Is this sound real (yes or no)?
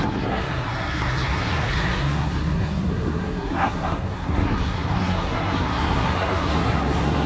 no